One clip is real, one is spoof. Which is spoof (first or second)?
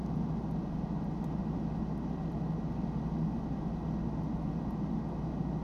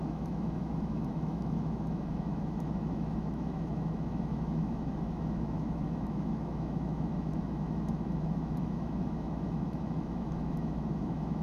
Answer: second